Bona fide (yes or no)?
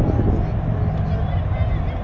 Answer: yes